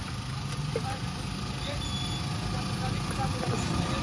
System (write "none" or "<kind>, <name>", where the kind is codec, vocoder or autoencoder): none